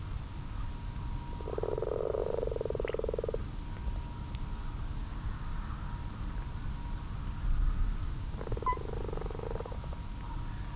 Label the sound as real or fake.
real